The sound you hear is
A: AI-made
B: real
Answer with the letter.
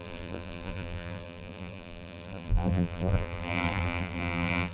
A